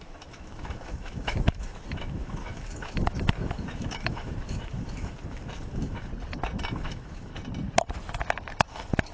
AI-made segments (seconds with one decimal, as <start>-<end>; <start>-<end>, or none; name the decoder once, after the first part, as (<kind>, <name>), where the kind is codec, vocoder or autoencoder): 0.0-6.1 (autoencoder, DAC-VAE); 6.7-7.3; 8.7-9.1